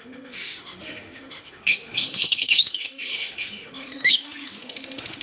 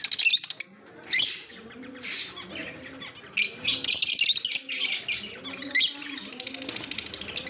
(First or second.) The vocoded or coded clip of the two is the first